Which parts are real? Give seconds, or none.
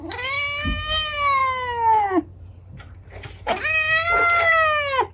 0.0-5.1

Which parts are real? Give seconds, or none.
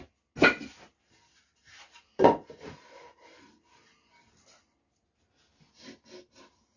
0.0-6.8